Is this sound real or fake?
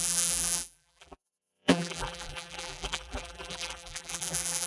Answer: fake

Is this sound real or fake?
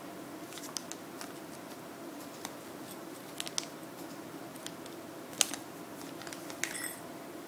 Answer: real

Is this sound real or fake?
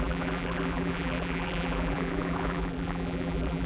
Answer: fake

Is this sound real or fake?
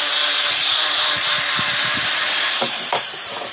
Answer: fake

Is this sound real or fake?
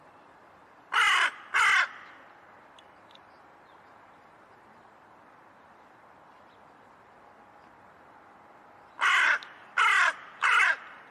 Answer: fake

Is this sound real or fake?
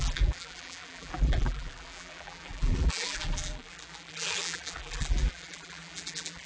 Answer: fake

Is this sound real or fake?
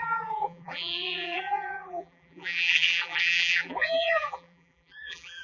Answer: fake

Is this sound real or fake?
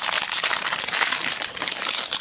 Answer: fake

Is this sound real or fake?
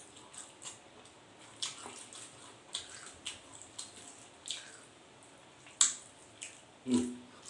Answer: real